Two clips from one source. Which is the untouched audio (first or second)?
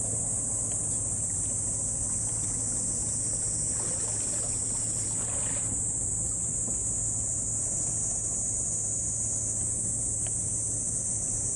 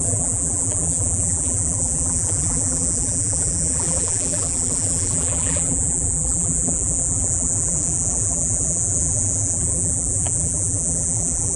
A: first